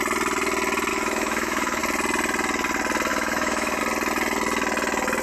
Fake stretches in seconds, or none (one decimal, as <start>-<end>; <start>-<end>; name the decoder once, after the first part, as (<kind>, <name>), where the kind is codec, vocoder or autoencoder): 0.9-1.8 (autoencoder, DAC-VAE); 3.1-3.8